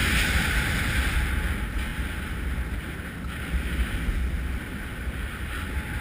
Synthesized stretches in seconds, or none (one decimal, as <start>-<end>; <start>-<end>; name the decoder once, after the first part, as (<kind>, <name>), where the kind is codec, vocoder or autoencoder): none